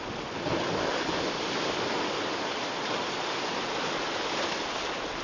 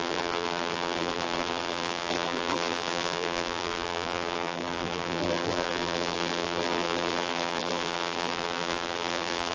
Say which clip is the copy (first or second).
second